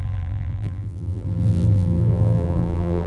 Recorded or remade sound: remade